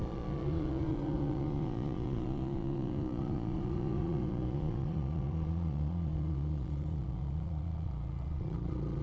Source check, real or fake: fake